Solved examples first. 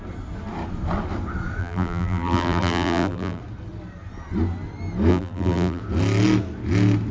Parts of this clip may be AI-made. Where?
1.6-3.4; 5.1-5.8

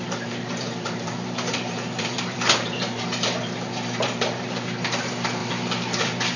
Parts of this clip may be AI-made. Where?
0.0-5.4; 6.0-6.4

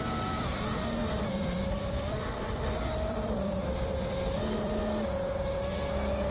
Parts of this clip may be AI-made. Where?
1.0-4.8

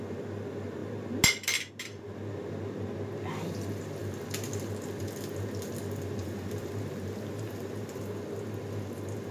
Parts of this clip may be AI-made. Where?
6.2-8.0

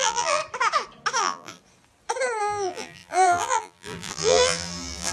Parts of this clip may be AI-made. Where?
0.0-0.4; 1.2-1.6; 2.4-5.1

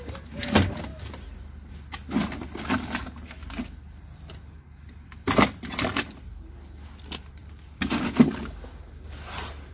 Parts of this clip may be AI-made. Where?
7.4-8.4